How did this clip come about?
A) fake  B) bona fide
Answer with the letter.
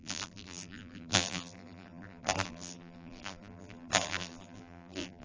A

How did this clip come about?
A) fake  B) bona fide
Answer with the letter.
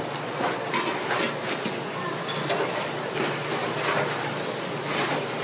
B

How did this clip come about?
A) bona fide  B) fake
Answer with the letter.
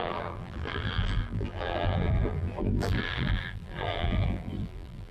B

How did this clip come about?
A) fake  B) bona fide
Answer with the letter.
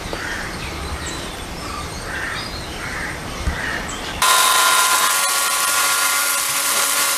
A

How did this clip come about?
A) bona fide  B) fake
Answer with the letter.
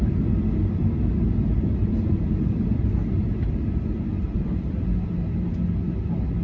B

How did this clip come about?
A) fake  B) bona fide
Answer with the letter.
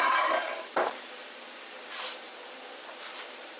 A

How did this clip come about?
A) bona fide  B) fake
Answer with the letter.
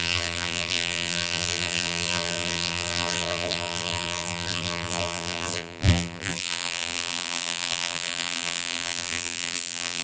B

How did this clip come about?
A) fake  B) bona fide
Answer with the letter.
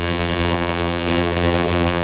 A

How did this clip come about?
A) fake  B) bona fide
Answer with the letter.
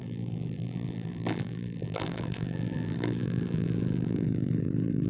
A